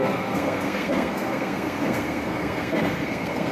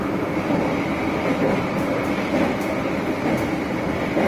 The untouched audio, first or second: second